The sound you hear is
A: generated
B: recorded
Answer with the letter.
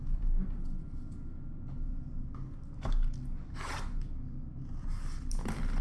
B